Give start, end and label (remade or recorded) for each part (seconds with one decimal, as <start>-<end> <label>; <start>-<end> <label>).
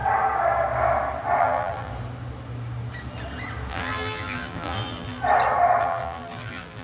0.0-1.4 recorded; 1.4-1.9 remade; 1.9-3.7 recorded; 3.7-5.2 remade; 5.2-5.8 recorded; 5.8-6.8 remade